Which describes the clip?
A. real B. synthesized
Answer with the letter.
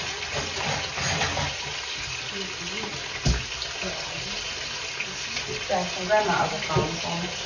A